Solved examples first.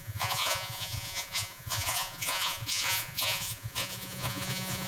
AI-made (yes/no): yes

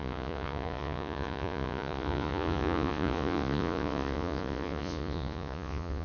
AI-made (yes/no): yes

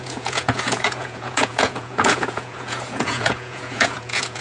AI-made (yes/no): yes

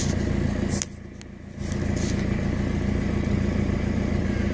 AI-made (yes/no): no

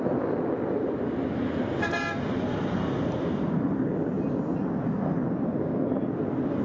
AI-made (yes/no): no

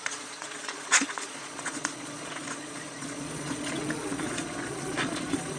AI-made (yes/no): yes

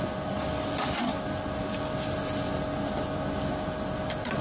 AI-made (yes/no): no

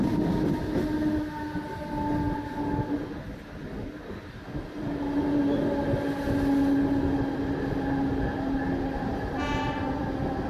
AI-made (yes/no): no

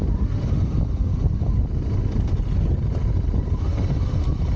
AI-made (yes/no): no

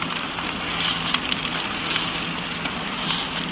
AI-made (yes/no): no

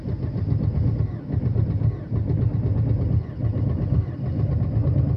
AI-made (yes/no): no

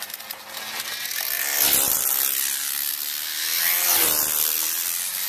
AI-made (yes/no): no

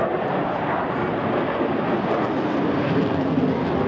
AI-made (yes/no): no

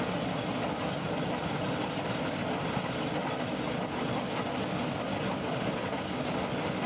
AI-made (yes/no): no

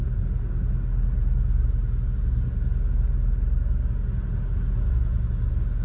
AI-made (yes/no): no